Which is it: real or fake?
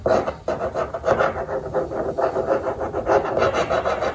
real